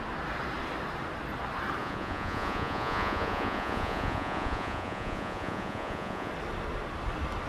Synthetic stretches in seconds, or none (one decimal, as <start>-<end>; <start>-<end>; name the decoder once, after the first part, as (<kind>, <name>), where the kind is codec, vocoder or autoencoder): 1.8-6.3 (vocoder, Vocos)